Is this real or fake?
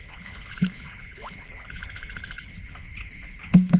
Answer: fake